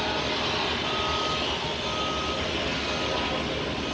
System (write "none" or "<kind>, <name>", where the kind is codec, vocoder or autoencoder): none